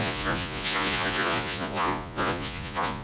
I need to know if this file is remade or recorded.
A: remade